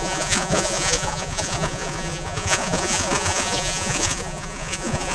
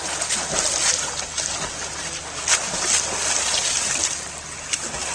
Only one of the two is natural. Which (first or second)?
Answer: second